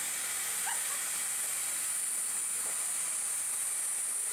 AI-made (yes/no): no